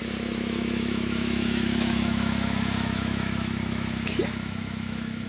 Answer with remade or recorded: remade